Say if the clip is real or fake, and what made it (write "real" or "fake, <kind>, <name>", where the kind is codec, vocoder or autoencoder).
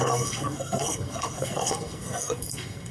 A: fake, codec, SNAC